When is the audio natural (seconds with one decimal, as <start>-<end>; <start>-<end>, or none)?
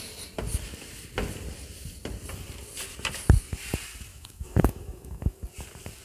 0.0-4.1; 5.4-6.0